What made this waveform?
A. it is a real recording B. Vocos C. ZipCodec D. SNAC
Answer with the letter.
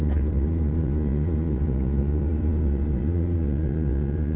B